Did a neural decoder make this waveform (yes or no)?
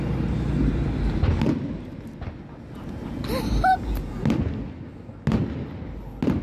no